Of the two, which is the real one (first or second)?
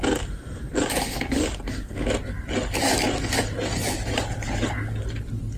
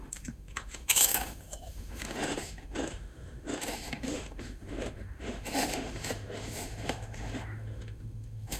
first